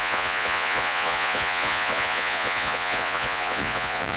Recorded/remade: remade